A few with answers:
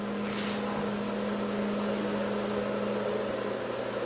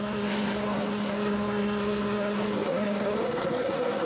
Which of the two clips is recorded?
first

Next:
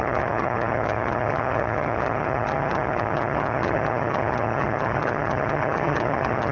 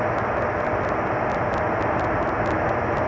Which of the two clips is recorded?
second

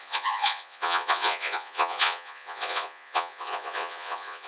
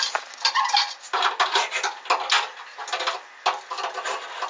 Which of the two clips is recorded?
second